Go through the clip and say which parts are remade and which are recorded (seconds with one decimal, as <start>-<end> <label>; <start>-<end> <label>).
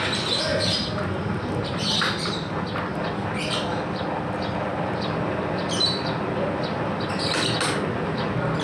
0.0-8.6 recorded